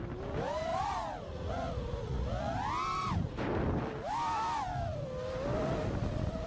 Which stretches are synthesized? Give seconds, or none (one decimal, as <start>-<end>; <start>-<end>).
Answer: 0.7-2.7